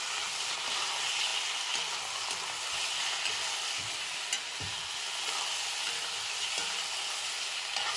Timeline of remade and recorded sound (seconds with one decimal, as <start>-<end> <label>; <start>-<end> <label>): 0.0-8.0 recorded